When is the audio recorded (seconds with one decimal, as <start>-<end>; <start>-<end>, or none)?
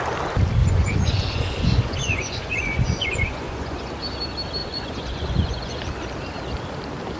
0.0-0.6; 3.9-4.6; 5.8-7.2